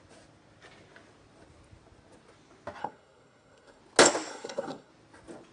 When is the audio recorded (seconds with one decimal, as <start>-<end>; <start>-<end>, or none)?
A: 0.0-2.8; 3.8-4.3; 4.9-5.5

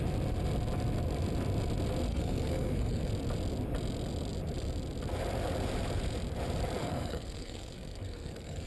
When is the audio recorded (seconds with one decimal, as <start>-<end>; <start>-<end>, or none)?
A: 0.0-2.1; 3.1-6.8

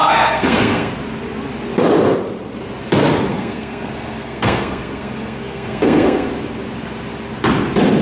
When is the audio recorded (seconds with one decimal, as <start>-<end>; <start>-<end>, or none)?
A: 0.9-3.3; 6.3-8.0

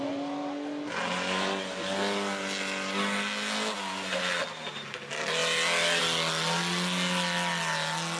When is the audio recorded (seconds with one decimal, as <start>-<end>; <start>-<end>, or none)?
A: 0.0-8.2

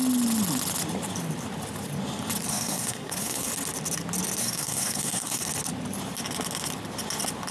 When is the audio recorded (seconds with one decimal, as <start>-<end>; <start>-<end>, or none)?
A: 0.0-2.5; 3.5-4.4; 5.4-7.5

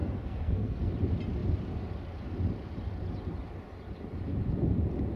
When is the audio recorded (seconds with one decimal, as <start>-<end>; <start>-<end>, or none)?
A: 0.9-5.2

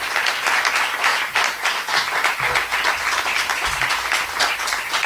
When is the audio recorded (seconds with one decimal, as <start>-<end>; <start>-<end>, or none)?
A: 0.0-5.1